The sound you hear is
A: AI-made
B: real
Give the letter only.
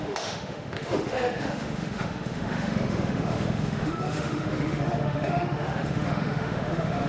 A